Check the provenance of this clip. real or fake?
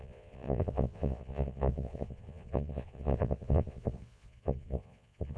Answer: fake